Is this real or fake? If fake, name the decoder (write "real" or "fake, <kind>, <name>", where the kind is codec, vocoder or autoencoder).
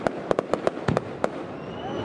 real